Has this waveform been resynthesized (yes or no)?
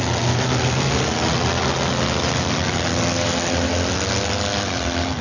no